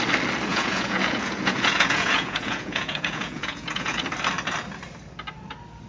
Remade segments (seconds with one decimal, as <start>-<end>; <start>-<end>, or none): 0.5-4.0